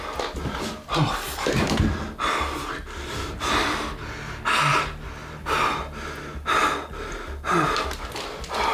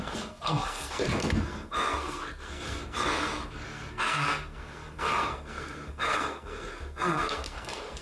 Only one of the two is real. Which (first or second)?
first